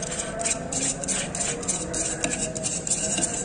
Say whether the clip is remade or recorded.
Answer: recorded